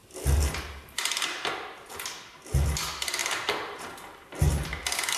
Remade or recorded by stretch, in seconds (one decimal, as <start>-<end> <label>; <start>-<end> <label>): 0.0-3.2 recorded; 3.2-4.5 remade; 4.5-5.2 recorded